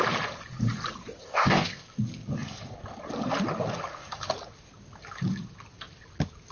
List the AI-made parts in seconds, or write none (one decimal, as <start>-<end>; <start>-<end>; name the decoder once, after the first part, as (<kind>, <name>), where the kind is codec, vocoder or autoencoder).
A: 1.2-2.0 (codec, ZipCodec)